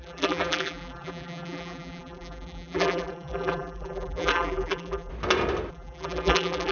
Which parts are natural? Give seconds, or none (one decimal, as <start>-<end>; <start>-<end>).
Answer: 5.1-5.7